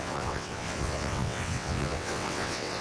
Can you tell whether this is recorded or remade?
remade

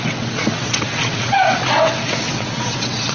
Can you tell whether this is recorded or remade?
remade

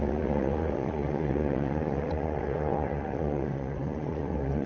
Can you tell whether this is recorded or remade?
remade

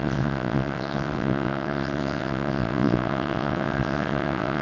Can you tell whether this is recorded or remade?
remade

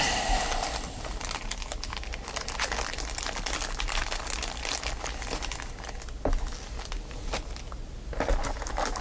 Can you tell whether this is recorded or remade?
recorded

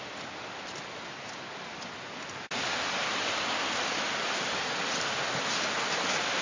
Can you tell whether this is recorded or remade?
recorded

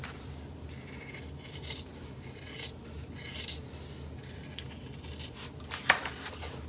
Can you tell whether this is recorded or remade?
recorded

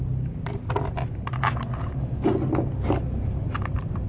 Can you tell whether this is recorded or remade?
recorded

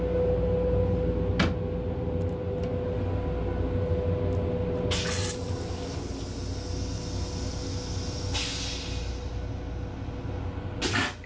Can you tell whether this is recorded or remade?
recorded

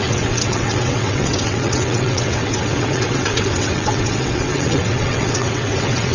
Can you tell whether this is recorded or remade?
remade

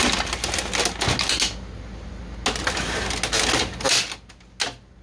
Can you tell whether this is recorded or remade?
recorded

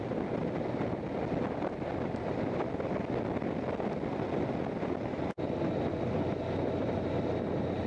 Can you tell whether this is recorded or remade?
recorded